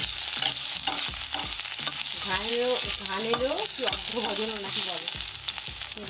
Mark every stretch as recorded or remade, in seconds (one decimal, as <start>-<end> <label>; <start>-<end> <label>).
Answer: 0.0-6.1 recorded